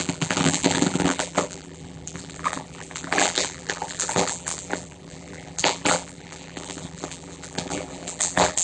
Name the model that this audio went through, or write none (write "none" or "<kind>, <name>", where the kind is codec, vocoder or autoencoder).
vocoder, BigVGAN v2